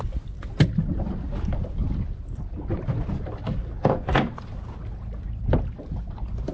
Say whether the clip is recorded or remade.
recorded